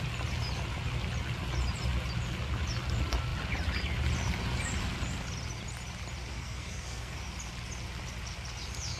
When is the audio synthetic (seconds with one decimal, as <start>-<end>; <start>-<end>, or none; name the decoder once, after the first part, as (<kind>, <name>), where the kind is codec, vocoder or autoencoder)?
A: 6.3-7.2 (codec, SNAC)